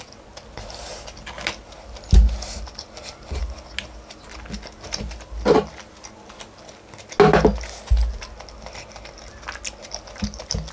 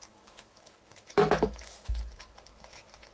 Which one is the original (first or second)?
first